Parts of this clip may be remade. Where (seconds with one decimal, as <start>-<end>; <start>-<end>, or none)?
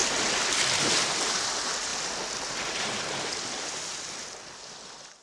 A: none